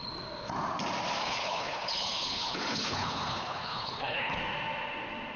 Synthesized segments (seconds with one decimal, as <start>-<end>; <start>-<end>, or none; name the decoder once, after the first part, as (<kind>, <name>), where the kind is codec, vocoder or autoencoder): 1.2-4.4 (codec, HILCodec)